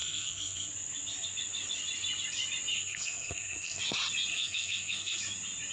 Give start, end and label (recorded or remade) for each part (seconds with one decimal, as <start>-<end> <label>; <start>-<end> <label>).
0.0-0.7 remade; 0.7-2.7 recorded; 2.7-3.8 remade; 3.8-4.3 recorded; 4.3-5.2 remade; 5.2-5.7 recorded